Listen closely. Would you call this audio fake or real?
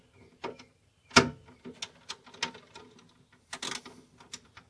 real